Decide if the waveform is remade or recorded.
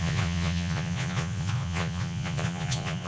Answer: remade